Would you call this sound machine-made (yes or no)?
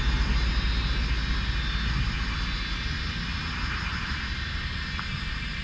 no